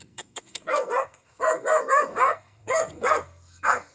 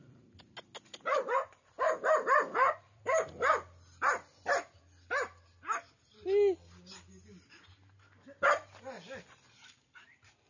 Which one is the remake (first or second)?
first